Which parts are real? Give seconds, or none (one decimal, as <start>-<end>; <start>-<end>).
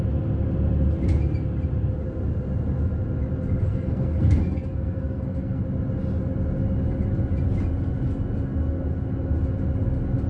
0.0-3.7; 5.6-10.3